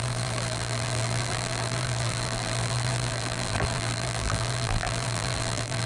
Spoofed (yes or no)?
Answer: yes